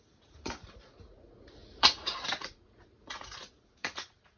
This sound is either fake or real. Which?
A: fake